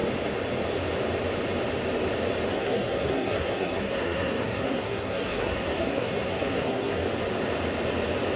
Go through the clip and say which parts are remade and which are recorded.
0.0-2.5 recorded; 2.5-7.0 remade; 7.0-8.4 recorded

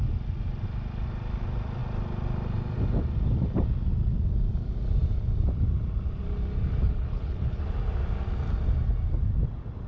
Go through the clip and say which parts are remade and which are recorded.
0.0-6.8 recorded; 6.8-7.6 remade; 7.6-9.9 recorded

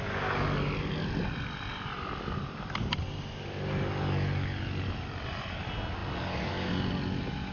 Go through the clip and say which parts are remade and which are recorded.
0.0-7.5 recorded

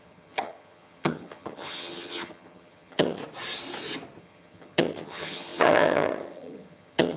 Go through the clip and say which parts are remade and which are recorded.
0.0-3.2 remade; 3.2-4.2 recorded; 4.2-7.2 remade